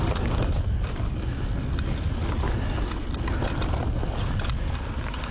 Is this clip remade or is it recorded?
recorded